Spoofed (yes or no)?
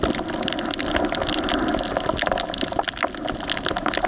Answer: no